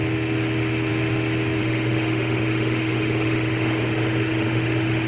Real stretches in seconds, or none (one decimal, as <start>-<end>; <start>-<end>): 0.0-1.6